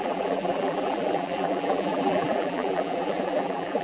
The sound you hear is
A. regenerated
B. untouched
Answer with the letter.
A